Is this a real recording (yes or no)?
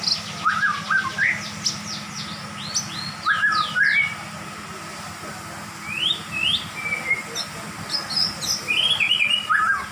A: yes